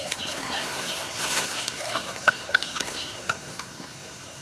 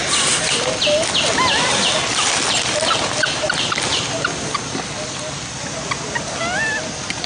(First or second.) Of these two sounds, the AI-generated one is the first